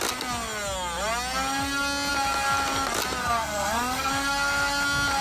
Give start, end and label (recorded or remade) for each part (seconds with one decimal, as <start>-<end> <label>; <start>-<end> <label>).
0.0-3.2 recorded; 3.2-4.1 remade; 4.1-5.2 recorded